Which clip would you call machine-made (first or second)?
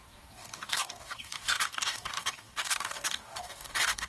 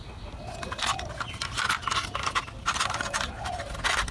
first